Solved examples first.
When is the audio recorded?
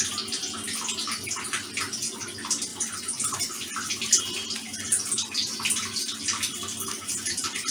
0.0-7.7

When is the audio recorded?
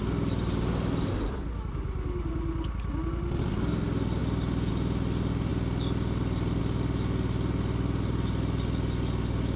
0.0-9.6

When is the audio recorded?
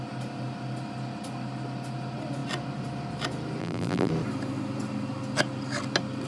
0.0-3.6; 4.1-6.3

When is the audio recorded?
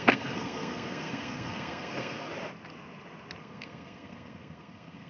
2.3-3.4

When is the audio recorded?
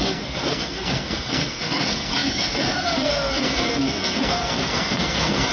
none